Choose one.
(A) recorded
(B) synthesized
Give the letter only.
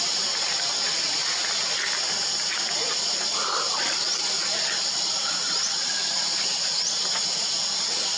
A